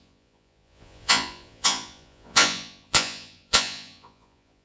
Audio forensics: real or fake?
fake